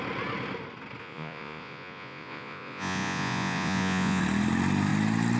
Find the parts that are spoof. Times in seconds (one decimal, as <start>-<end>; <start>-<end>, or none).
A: 1.0-4.2

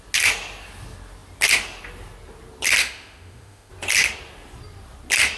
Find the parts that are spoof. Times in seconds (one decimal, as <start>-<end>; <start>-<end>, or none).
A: 2.8-3.7

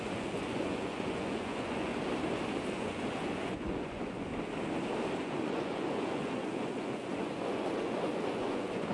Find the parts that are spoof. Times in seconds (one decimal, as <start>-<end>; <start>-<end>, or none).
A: 0.0-1.9; 2.7-4.3; 5.2-8.9

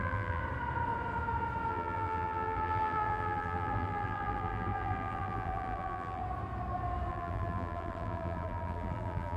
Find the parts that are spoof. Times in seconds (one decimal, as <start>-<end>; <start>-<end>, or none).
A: 0.0-0.4; 1.7-6.2; 7.1-9.4

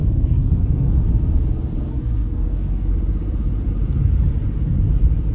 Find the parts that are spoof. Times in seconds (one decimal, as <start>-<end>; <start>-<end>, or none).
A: 0.0-1.1; 1.9-2.9

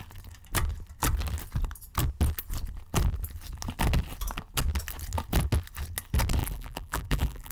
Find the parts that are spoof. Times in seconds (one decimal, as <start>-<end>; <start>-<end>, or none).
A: 6.4-7.5